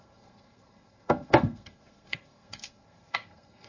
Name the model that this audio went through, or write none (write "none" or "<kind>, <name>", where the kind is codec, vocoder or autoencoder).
codec, SNAC